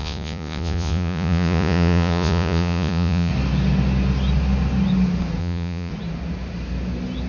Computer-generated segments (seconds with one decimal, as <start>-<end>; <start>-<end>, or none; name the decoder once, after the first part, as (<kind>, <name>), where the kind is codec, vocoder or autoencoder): 0.0-3.3 (vocoder, Vocos); 5.4-5.9